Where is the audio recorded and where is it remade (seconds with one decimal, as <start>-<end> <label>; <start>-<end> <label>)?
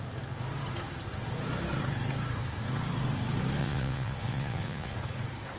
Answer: 0.0-3.6 recorded; 3.6-5.0 remade; 5.0-5.6 recorded